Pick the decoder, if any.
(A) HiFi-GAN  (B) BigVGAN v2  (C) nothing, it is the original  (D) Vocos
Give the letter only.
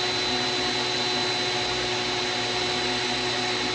C